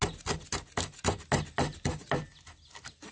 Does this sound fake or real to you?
real